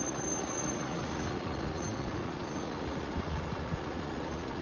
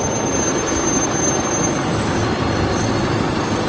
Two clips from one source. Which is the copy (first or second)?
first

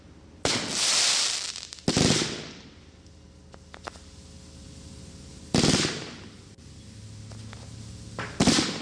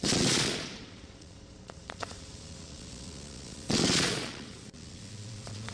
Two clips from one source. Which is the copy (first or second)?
second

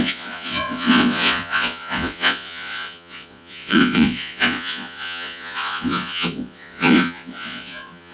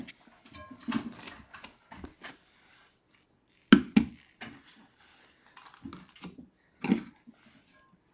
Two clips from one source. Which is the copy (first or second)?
first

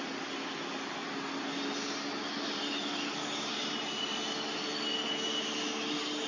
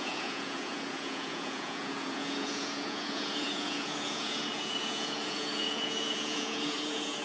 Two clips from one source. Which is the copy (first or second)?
second